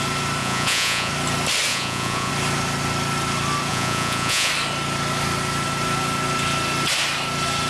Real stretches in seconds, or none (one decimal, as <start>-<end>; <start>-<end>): 0.0-0.4; 1.1-1.7; 2.3-3.7; 4.5-7.7